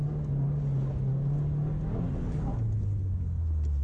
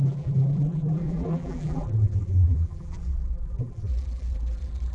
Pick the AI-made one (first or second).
second